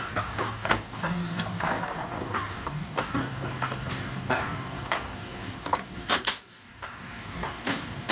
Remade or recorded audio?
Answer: remade